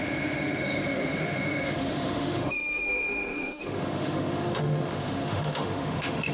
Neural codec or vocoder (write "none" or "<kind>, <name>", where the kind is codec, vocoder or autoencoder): autoencoder, DAC-VAE